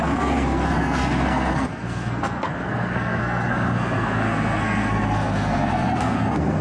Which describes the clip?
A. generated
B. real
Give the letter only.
A